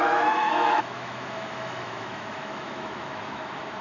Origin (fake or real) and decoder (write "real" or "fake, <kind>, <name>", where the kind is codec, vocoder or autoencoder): fake, autoencoder, DAC-VAE